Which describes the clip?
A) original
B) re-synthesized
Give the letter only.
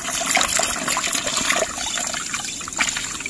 A